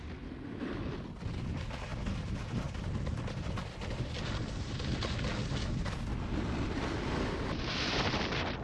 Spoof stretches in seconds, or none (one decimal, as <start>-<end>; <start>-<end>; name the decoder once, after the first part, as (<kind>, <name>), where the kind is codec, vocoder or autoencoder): none